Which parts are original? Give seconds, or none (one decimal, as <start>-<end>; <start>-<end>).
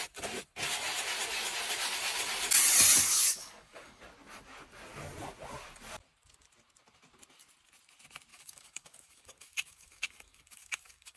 0.0-3.0; 4.0-8.3